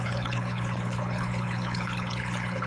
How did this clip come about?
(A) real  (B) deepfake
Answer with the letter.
B